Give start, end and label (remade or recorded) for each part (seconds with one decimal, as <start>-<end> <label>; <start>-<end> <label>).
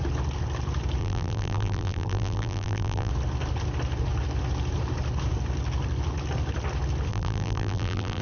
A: 0.0-1.0 recorded; 1.0-3.1 remade; 3.1-7.1 recorded; 7.1-8.2 remade